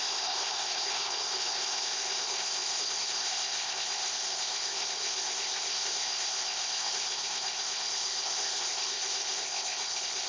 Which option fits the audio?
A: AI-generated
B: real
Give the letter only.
A